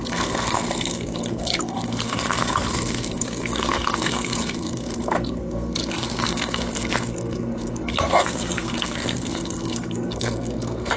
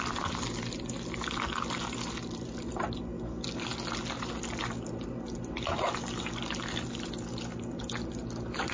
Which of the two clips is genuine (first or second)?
second